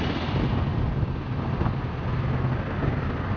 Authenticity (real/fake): real